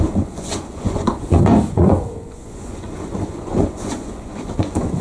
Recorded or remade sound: remade